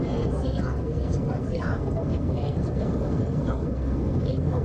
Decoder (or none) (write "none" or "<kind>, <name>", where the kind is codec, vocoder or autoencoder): codec, SNAC